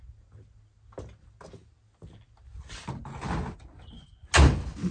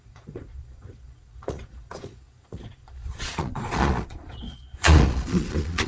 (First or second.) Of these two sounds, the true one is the first